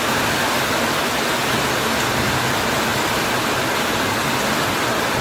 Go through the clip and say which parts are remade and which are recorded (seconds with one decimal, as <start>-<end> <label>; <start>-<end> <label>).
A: 0.0-5.2 recorded